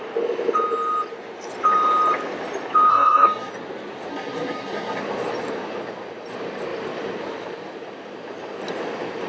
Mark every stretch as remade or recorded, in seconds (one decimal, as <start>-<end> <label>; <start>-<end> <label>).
0.0-2.9 recorded; 2.9-3.5 remade; 3.5-4.1 recorded; 4.1-5.0 remade; 5.0-9.3 recorded